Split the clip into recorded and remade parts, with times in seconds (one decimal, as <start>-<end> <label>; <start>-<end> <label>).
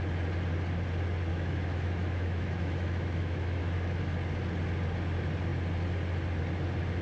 0.0-1.3 recorded; 1.3-4.0 remade; 4.0-7.0 recorded